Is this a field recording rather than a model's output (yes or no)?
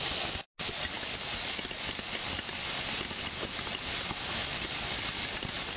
yes